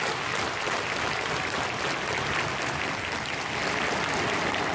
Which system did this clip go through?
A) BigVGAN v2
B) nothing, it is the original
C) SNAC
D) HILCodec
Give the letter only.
B